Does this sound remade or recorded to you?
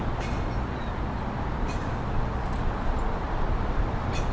remade